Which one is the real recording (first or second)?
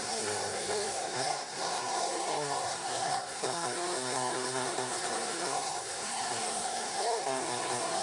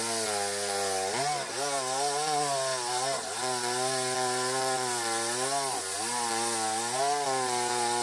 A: second